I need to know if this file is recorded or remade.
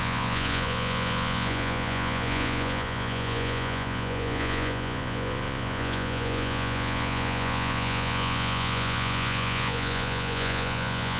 remade